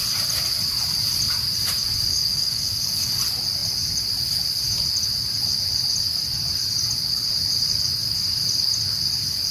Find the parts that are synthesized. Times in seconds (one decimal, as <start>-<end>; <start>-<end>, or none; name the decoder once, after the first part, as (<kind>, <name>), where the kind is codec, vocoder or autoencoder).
2.1-3.2 (codec, DAC)